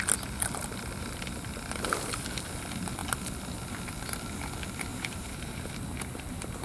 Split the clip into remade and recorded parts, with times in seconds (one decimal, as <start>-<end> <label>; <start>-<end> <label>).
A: 0.0-4.9 recorded; 4.9-5.7 remade; 5.7-6.6 recorded